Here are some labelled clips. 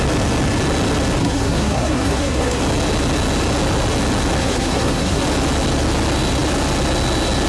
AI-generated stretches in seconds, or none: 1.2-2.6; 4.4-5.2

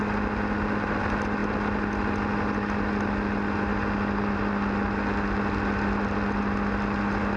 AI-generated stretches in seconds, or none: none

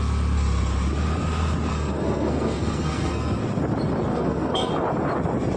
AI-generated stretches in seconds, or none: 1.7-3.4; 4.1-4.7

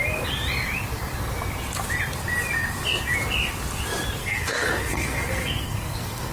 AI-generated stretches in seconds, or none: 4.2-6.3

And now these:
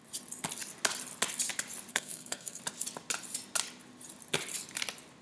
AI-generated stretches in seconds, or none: 1.9-2.6

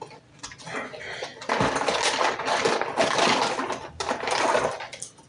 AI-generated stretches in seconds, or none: none